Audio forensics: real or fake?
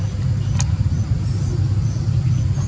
real